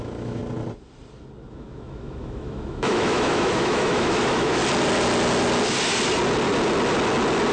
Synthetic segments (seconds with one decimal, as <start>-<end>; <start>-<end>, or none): 0.0-0.4; 1.5-4.6